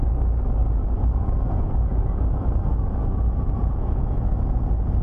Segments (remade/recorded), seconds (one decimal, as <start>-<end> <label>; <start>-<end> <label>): 0.0-0.6 recorded; 0.6-2.3 remade; 2.3-3.6 recorded; 3.6-4.5 remade; 4.5-5.0 recorded